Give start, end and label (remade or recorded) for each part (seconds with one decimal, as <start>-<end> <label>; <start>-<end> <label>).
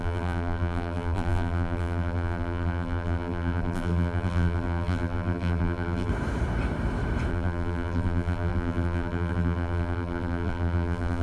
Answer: 0.0-6.1 remade; 6.1-7.3 recorded; 7.3-11.2 remade